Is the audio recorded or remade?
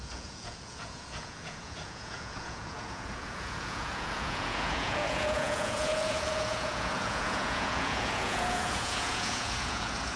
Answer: remade